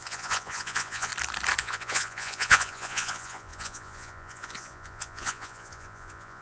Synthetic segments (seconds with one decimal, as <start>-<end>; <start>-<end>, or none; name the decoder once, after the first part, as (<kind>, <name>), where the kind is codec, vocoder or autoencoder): 0.0-1.1 (vocoder, Vocos); 1.6-6.4